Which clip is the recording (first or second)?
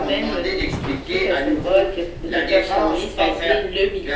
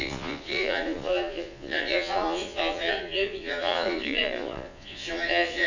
first